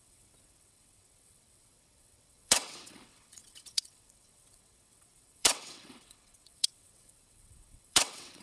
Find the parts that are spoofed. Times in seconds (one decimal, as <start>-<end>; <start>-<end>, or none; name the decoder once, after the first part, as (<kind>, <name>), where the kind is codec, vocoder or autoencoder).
0.0-8.4 (vocoder, WaveNeXt)